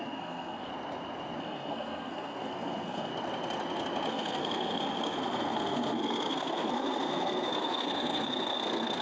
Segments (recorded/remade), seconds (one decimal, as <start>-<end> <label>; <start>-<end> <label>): 0.0-0.7 remade; 0.7-1.4 recorded; 1.4-3.1 remade; 3.1-4.1 recorded; 4.1-9.0 remade